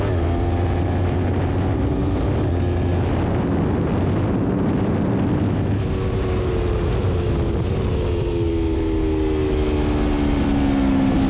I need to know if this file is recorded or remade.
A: recorded